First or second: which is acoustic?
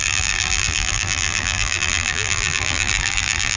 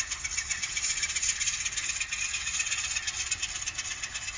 second